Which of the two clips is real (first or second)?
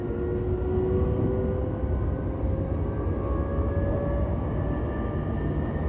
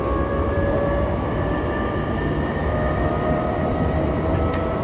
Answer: first